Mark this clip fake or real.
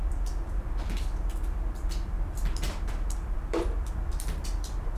fake